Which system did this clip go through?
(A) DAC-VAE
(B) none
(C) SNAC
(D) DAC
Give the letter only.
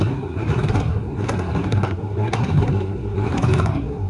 C